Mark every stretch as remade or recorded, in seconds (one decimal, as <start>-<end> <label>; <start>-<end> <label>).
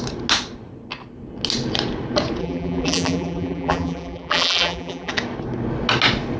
0.0-2.4 recorded; 2.4-5.1 remade; 5.1-6.4 recorded